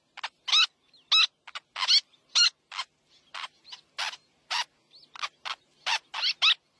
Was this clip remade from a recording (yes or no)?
no